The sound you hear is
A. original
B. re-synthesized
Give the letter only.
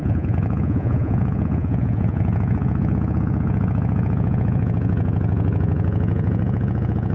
B